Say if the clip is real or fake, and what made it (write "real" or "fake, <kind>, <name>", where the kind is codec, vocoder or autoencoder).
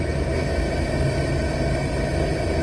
real